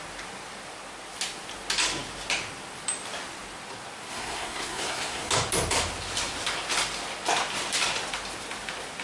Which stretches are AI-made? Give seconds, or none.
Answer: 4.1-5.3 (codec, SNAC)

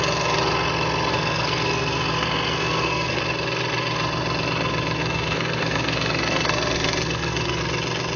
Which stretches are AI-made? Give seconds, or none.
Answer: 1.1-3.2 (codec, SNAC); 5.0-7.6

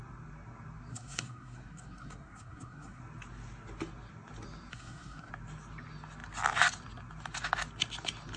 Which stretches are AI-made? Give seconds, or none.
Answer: 0.9-3.0 (codec, SNAC); 4.7-5.3

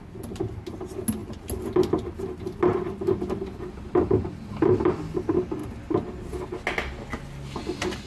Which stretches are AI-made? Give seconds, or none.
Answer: none

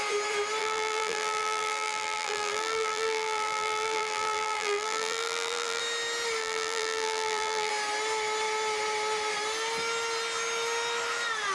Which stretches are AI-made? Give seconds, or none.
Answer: 0.6-5.8 (vocoder, BigVGAN v2); 6.4-7.7